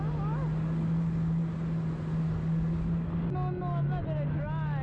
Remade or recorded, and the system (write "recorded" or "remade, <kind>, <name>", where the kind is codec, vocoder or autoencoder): recorded